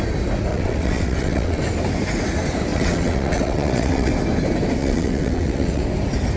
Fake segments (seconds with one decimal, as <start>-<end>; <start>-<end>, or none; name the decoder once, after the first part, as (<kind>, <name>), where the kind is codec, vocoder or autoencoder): 0.5-1.6 (vocoder, WaveNeXt); 2.7-4.1; 4.8-5.8